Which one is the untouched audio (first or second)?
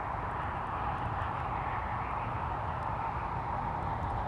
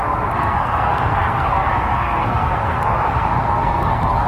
first